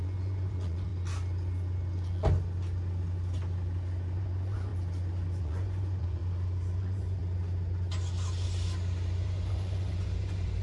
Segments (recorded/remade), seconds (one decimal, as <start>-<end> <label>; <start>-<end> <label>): 0.0-0.9 remade; 0.9-4.2 recorded; 4.2-4.7 remade; 4.7-5.4 recorded; 5.4-6.2 remade; 6.2-6.8 recorded; 6.8-7.2 remade; 7.2-9.2 recorded; 9.2-10.6 remade